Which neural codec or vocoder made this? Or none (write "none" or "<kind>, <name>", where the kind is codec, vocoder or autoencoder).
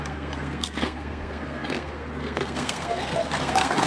codec, SNAC